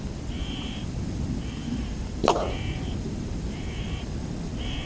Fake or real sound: fake